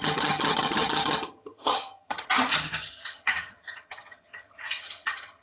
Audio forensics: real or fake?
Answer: fake